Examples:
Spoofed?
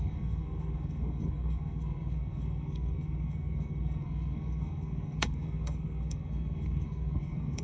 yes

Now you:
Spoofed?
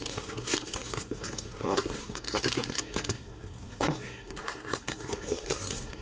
yes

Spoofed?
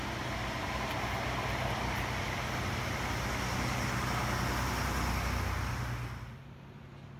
no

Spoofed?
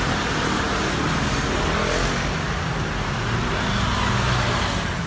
no